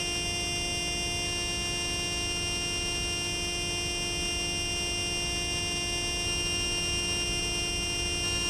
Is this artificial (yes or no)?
no